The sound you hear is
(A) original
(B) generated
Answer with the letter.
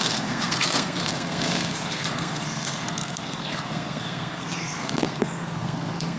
B